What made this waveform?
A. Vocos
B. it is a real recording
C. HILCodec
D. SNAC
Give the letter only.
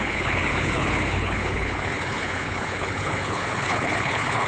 C